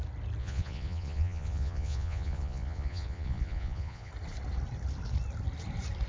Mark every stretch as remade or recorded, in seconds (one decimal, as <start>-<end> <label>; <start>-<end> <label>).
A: 0.0-0.4 recorded; 0.4-4.1 remade; 4.1-6.1 recorded